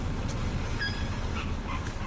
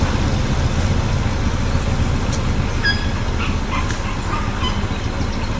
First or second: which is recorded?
second